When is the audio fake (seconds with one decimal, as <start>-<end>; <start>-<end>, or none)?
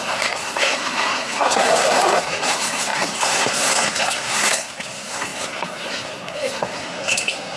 0.0-7.6